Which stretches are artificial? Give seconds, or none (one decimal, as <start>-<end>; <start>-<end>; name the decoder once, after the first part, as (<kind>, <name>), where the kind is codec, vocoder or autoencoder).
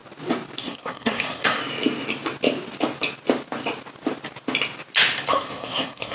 0.6-1.6 (codec, SNAC); 5.3-6.1